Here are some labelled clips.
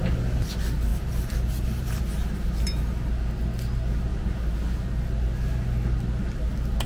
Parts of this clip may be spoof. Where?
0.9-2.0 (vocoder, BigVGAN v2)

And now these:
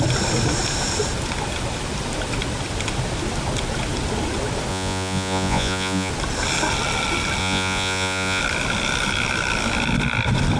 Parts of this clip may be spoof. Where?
4.7-6.1 (vocoder, Vocos); 7.4-8.4

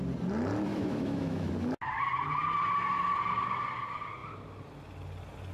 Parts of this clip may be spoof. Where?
0.7-1.5 (autoencoder, DAC-VAE)

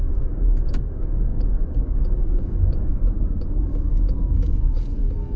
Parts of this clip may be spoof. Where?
0.0-5.4 (codec, DAC)

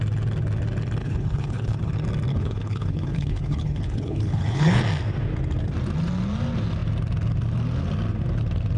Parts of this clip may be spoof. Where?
1.0-1.9 (codec, HILCodec); 2.3-4.8